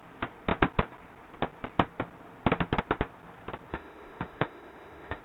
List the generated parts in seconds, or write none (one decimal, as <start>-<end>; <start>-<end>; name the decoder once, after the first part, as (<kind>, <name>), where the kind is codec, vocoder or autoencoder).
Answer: 3.7-5.2 (autoencoder, DAC-VAE)